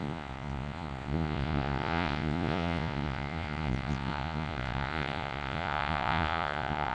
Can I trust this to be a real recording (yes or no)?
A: no